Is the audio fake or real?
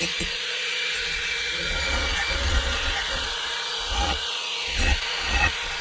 fake